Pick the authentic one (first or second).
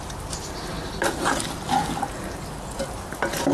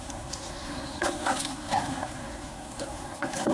first